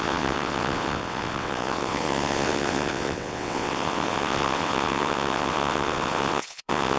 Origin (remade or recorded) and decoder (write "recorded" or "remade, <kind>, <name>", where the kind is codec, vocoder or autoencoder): remade, vocoder, WaveNeXt